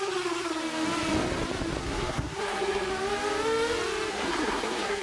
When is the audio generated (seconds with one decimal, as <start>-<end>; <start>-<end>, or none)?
0.0-0.6; 1.8-2.9; 4.1-5.0